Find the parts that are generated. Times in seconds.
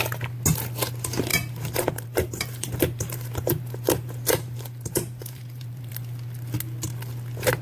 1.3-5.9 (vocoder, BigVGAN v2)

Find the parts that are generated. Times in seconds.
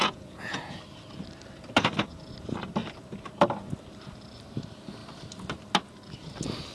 0.0-0.8 (vocoder, Vocos)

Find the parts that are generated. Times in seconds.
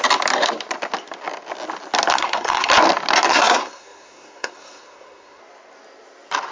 2.1-2.7 (codec, SNAC); 3.3-5.4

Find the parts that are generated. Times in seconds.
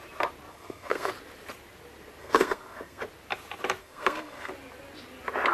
0.5-1.1 (codec, SNAC); 2.2-3.0; 3.8-4.5